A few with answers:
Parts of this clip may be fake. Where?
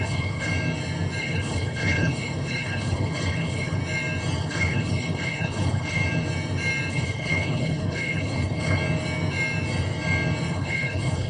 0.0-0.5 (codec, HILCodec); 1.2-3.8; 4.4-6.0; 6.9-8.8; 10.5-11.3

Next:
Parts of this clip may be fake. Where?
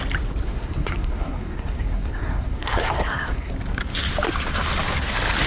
0.4-3.5 (codec, SNAC)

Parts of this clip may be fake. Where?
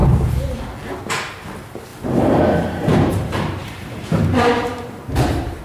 1.9-5.6 (vocoder, BigVGAN v2)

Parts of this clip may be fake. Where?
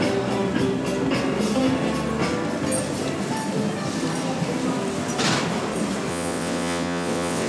6.1-7.5 (vocoder, WaveNeXt)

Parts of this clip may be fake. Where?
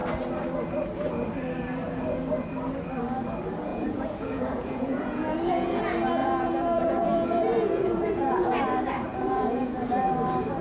3.7-5.8 (vocoder, Vocos); 6.2-8.6; 9.1-9.9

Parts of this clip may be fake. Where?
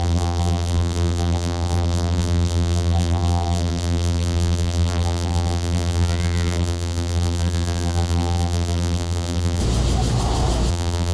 0.0-9.6 (vocoder, BigVGAN v2); 10.7-11.1